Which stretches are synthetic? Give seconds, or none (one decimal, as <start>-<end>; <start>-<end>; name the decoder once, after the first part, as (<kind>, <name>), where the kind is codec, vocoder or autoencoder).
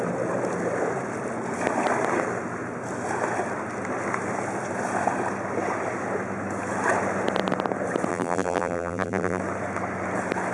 8.1-9.4 (vocoder, BigVGAN v2)